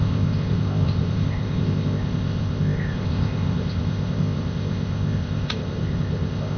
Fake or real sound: fake